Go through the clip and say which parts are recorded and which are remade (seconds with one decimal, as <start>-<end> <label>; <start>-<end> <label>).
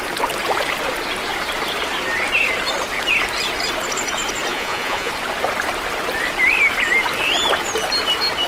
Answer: 0.0-4.5 recorded; 4.5-5.1 remade; 5.1-8.5 recorded